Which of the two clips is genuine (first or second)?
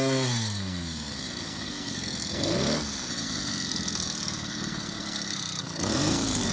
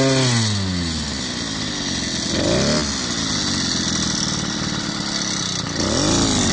second